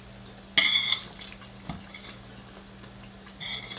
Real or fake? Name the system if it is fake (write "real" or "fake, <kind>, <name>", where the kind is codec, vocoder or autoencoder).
real